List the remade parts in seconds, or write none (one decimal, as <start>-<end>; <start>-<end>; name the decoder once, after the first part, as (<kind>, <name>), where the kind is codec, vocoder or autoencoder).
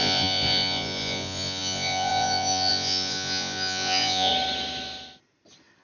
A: 0.0-4.3 (vocoder, Vocos)